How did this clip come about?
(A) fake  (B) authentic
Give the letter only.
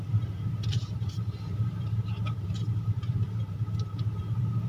A